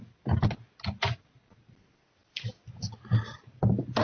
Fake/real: real